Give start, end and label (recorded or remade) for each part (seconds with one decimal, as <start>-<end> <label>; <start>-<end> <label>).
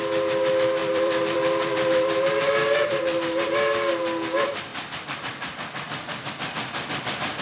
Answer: 0.0-0.8 recorded; 0.8-2.4 remade; 2.4-7.4 recorded